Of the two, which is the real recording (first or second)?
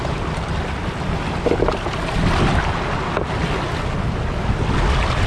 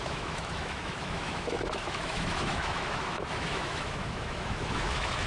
first